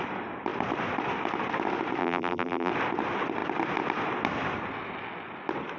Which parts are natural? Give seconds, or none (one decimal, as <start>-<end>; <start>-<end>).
0.0-2.0; 2.7-5.8